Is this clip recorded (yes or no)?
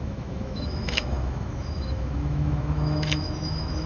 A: no